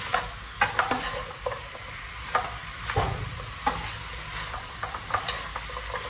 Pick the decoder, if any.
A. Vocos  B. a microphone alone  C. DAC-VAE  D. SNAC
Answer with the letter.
B